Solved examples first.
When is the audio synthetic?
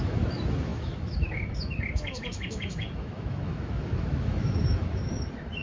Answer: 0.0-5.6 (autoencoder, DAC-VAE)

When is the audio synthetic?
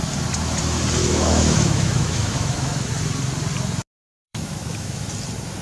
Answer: 1.0-2.9 (autoencoder, DAC-VAE); 4.0-5.1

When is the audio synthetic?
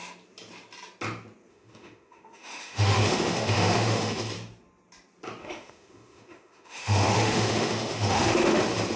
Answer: 1.5-4.2 (autoencoder, DAC-VAE); 5.4-8.6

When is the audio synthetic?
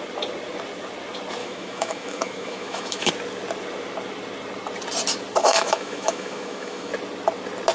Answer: 1.4-3.1 (autoencoder, DAC-VAE); 5.4-6.9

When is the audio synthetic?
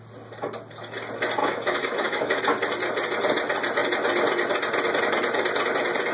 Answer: 1.4-2.4 (autoencoder, DAC-VAE)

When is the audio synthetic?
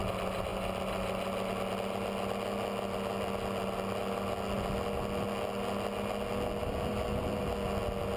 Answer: none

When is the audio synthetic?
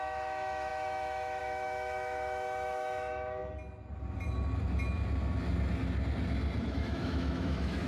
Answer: 0.0-3.4 (autoencoder, DAC-VAE); 6.6-7.9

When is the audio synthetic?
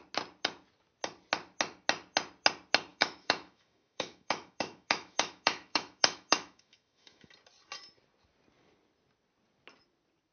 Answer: 2.9-7.3 (autoencoder, DAC-VAE)